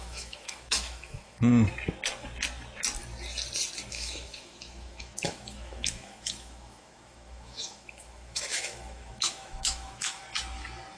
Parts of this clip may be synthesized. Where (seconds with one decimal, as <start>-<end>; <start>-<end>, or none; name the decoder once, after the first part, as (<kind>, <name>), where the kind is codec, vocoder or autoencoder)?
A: 0.0-1.5 (autoencoder, DAC-VAE); 3.9-10.2